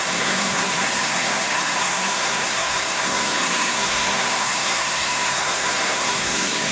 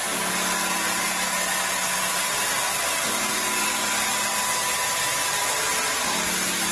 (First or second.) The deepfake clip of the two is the first